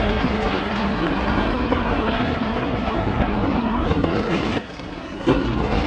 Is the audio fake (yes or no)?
yes